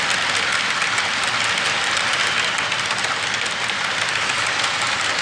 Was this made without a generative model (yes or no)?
yes